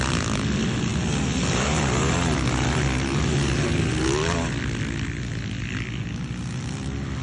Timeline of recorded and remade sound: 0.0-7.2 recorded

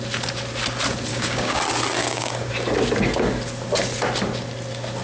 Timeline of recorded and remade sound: 0.0-1.1 recorded; 1.1-1.6 remade; 1.6-2.0 recorded; 2.0-2.5 remade; 2.5-5.0 recorded

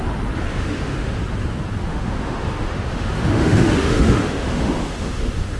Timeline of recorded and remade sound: 0.0-0.5 recorded; 0.5-1.2 remade; 1.2-1.9 recorded; 1.9-5.6 remade